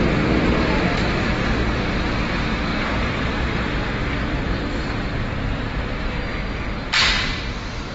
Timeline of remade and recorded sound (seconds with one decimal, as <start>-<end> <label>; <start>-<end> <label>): 0.0-2.7 recorded; 2.7-7.4 remade; 7.4-7.9 recorded